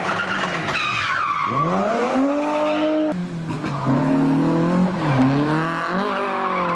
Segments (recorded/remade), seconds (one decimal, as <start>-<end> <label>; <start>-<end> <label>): 0.0-0.9 recorded; 0.9-2.3 remade; 2.3-6.8 recorded